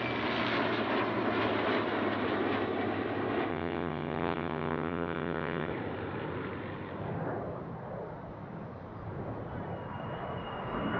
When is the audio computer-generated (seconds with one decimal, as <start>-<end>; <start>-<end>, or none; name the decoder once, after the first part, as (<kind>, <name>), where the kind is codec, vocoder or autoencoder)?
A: 3.5-5.7 (vocoder, HiFi-GAN)